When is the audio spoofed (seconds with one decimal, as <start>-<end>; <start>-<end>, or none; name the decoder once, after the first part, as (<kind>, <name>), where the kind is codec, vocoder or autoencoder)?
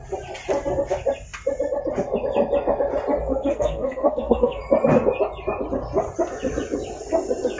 3.3-4.6 (codec, SNAC)